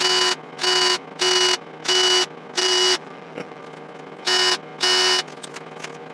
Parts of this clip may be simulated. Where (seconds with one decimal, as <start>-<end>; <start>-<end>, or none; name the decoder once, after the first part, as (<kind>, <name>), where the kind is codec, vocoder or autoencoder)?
2.6-3.6 (vocoder, BigVGAN v2)